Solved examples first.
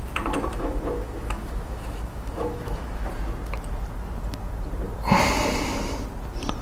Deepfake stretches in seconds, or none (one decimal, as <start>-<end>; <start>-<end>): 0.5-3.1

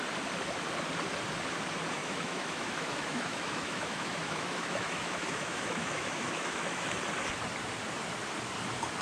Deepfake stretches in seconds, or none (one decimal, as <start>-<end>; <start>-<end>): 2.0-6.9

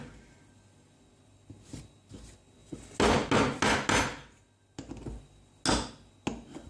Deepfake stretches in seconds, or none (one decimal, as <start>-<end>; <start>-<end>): none